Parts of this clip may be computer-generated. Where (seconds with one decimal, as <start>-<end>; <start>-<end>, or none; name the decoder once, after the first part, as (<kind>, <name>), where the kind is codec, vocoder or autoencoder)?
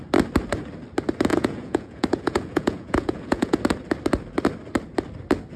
1.3-3.6 (vocoder, Vocos)